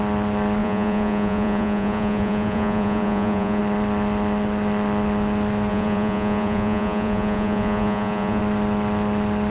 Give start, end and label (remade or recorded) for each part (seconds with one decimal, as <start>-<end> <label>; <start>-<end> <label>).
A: 0.0-0.6 recorded; 0.6-3.6 remade; 3.6-5.7 recorded; 5.7-8.4 remade; 8.4-9.5 recorded